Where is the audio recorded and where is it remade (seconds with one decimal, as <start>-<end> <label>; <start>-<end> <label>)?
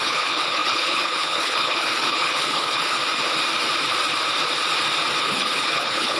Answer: 0.0-3.0 remade; 3.0-5.2 recorded; 5.2-6.2 remade